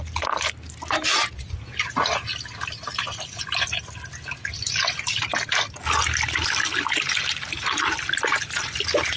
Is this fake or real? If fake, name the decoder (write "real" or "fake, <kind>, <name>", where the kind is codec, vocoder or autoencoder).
real